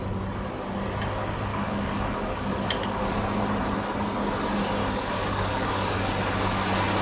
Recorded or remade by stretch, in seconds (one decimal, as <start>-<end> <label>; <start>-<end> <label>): 0.0-1.5 recorded; 1.5-3.4 remade; 3.4-4.8 recorded; 4.8-6.1 remade; 6.1-7.0 recorded